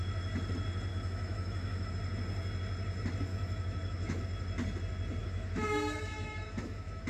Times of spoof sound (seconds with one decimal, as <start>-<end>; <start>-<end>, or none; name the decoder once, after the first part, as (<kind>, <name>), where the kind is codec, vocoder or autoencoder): 0.9-1.9 (autoencoder, DAC-VAE); 3.3-4.2; 5.2-7.1